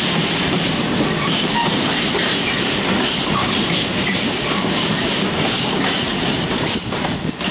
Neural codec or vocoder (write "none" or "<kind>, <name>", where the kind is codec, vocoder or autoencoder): none